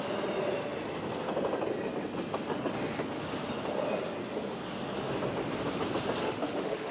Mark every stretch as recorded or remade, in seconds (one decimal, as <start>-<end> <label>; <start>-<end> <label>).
0.0-6.2 recorded; 6.2-6.9 remade